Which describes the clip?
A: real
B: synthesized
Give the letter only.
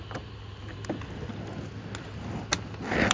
A